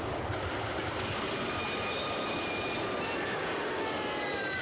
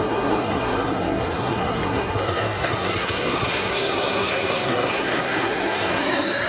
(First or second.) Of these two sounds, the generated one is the second